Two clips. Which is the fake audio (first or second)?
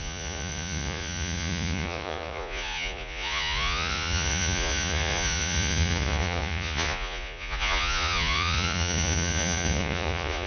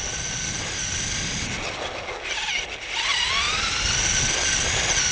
first